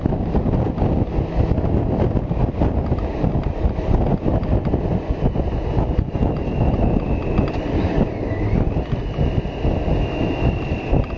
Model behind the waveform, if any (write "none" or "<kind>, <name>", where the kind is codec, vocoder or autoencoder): none